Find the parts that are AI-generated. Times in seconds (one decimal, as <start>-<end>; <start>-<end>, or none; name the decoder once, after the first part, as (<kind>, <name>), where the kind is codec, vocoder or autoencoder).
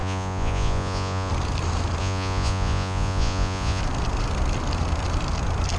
0.0-1.3 (vocoder, Vocos); 2.0-3.8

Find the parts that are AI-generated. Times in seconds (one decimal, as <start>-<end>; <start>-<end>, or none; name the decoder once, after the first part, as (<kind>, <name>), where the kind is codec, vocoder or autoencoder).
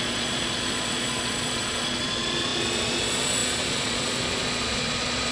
0.0-5.3 (vocoder, Vocos)